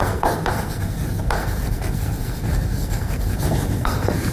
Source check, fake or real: fake